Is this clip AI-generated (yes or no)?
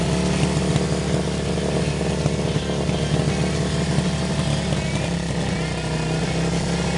no